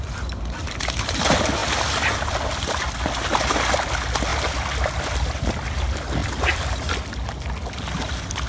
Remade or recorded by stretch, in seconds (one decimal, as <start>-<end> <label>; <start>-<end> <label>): 0.0-0.6 recorded; 0.6-1.2 remade; 1.2-4.3 recorded; 4.3-4.9 remade; 4.9-6.2 recorded; 6.2-7.3 remade; 7.3-8.5 recorded